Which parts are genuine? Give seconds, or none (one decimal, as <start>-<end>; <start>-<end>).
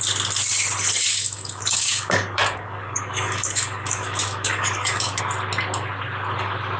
0.0-1.1; 5.2-6.8